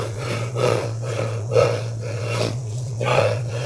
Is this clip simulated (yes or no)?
yes